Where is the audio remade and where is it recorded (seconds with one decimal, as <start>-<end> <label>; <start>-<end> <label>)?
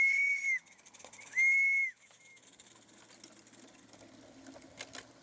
0.0-1.8 recorded; 1.8-2.4 remade; 2.4-5.2 recorded